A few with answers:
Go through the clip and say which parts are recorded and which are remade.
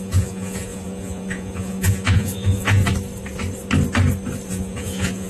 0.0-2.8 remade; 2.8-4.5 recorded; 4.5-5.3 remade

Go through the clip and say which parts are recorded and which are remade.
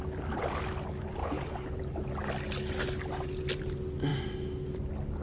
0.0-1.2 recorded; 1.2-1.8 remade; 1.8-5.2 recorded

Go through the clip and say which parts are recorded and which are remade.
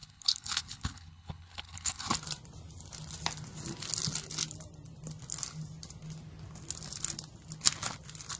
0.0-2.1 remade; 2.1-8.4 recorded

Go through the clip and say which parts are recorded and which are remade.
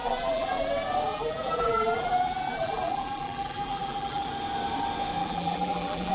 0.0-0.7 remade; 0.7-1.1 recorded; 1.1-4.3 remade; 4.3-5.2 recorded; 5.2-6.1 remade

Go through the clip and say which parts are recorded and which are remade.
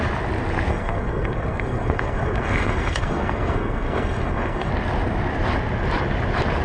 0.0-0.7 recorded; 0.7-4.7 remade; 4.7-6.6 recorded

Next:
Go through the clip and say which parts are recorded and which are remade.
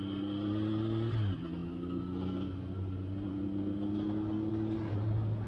0.0-5.5 recorded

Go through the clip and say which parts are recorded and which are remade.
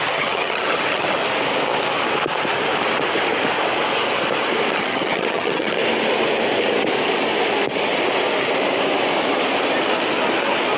0.0-1.2 remade; 1.2-4.7 recorded; 4.7-5.8 remade; 5.8-10.8 recorded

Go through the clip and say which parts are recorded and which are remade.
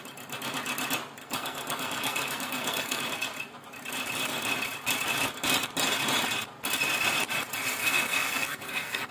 0.0-1.2 recorded; 1.2-3.0 remade; 3.0-7.8 recorded; 7.8-9.1 remade